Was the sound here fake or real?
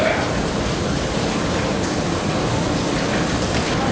real